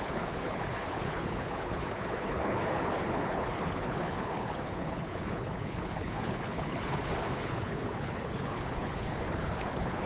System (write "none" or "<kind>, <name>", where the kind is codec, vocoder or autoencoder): codec, HILCodec